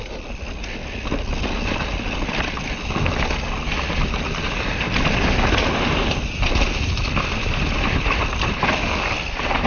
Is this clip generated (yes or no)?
no